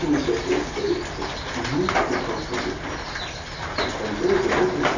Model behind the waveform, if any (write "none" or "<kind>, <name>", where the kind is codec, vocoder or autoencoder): none